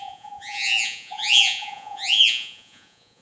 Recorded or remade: remade